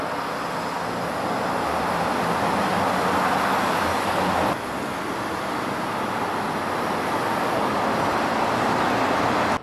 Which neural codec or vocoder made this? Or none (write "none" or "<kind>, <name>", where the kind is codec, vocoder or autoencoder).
none